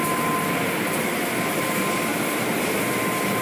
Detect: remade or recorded recorded